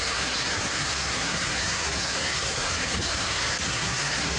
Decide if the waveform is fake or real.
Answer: fake